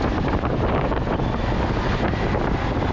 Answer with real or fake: real